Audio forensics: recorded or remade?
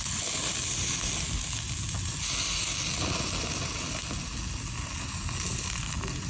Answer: recorded